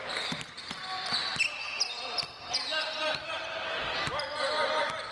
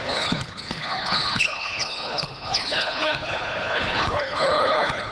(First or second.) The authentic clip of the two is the first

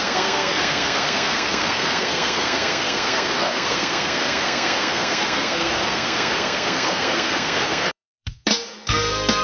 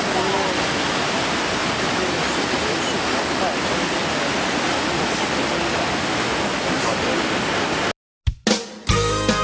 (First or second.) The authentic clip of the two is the second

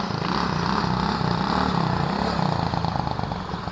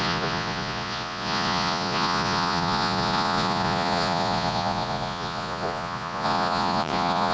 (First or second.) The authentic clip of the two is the first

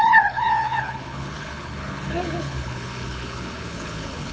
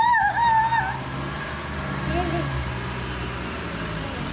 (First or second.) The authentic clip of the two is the second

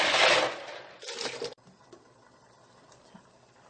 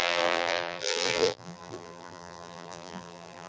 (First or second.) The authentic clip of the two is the first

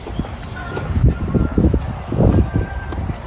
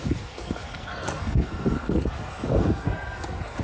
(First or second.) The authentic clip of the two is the first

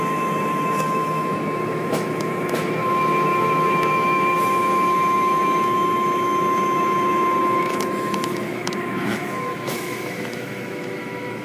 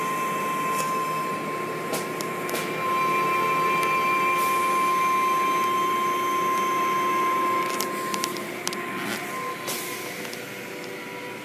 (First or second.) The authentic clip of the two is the second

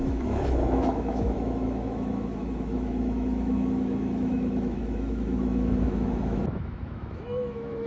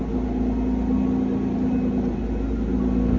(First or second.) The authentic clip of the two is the second